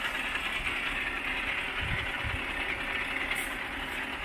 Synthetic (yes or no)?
no